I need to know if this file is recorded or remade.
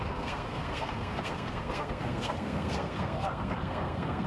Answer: remade